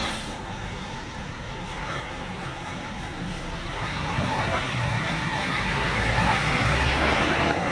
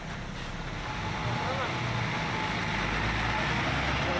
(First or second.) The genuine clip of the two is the second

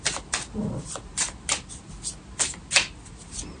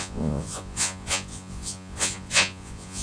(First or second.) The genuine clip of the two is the first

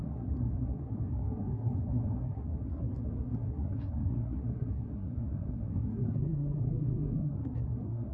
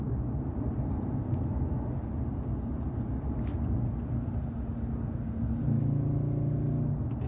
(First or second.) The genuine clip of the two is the second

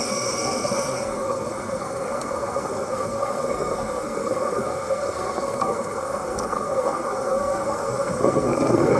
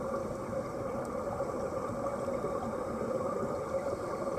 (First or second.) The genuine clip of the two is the second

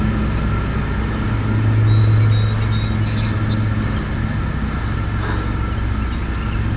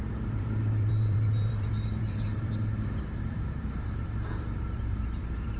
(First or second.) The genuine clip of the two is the first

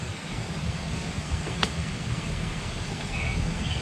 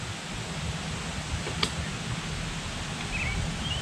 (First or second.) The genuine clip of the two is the second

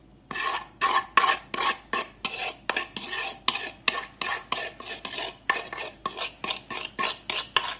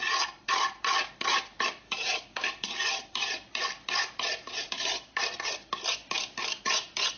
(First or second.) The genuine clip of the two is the first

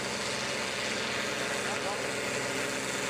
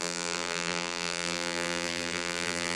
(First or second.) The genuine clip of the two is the first